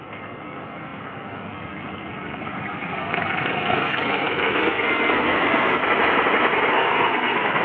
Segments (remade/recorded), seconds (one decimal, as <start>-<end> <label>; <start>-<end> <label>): 0.0-5.8 remade; 5.8-6.7 recorded; 6.7-7.6 remade